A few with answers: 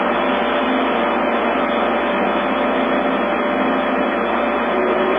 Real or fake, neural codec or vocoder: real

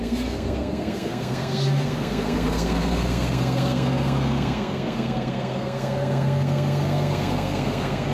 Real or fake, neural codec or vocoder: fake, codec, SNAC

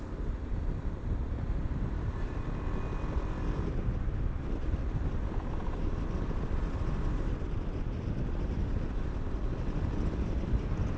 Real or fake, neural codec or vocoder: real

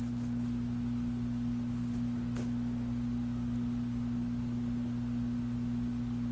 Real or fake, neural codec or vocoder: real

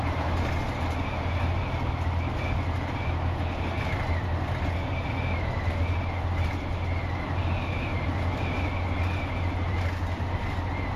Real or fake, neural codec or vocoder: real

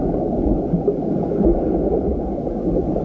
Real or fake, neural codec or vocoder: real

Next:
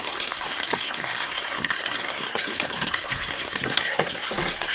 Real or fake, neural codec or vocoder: fake, codec, SNAC